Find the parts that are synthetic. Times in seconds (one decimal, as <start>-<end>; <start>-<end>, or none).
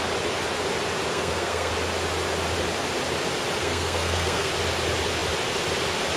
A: 1.1-1.7; 3.6-4.5